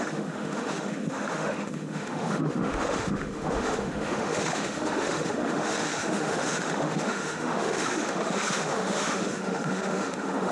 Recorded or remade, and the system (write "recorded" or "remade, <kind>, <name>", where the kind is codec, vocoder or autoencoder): remade, autoencoder, DAC-VAE